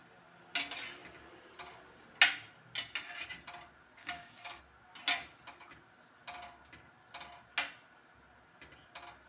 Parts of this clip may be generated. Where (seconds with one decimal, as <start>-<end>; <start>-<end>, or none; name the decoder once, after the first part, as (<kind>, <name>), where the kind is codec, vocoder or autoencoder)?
4.0-4.6 (codec, DAC)